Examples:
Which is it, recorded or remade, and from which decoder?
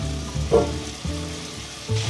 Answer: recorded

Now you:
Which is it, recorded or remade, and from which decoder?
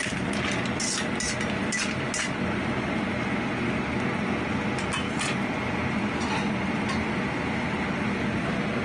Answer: recorded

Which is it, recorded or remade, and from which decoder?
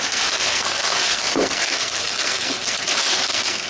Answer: remade, codec, SNAC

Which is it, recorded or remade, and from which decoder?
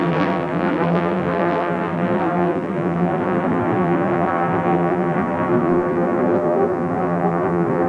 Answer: remade, vocoder, BigVGAN v2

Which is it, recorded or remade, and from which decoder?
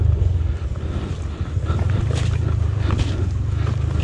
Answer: recorded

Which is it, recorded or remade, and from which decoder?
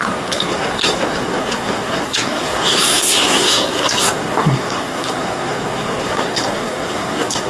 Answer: remade, codec, SNAC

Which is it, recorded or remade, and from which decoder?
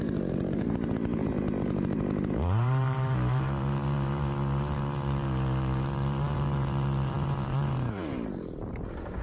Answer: remade, vocoder, BigVGAN v2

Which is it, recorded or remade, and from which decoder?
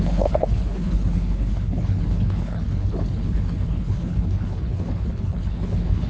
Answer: remade, codec, HILCodec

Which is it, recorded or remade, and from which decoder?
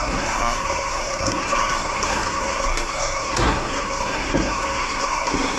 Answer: remade, codec, SNAC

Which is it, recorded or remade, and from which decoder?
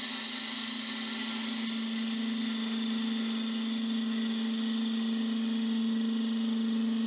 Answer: recorded